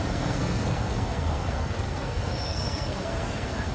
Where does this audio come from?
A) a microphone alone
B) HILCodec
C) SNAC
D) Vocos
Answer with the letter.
C